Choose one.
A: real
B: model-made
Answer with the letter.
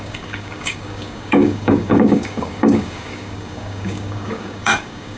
B